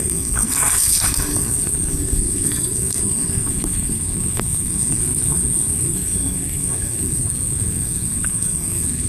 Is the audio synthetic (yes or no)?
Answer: yes